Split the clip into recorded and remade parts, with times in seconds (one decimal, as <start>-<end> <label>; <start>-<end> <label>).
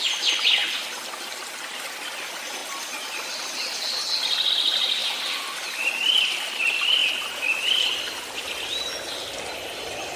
0.0-0.6 remade; 0.6-1.7 recorded; 1.7-2.6 remade; 2.6-4.5 recorded; 4.5-5.0 remade; 5.0-5.7 recorded; 5.7-7.0 remade; 7.0-9.3 recorded; 9.3-10.2 remade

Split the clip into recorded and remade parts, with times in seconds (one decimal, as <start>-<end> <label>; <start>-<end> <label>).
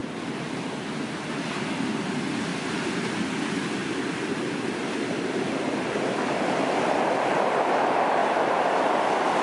0.0-2.5 recorded; 2.5-3.2 remade; 3.2-3.8 recorded; 3.8-6.4 remade; 6.4-8.2 recorded; 8.2-8.7 remade; 8.7-9.4 recorded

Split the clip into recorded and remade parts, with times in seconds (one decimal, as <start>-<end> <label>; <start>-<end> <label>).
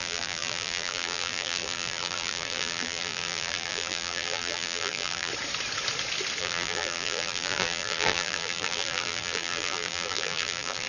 0.0-5.3 remade; 5.3-6.4 recorded; 6.4-10.9 remade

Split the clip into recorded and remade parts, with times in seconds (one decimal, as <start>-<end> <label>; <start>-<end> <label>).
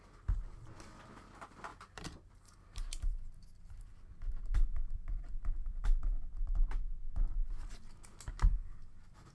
0.0-1.7 recorded; 1.7-6.0 remade; 6.0-9.3 recorded